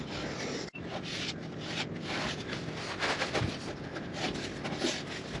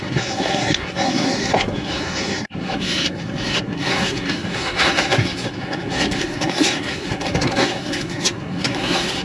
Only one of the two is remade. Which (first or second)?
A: second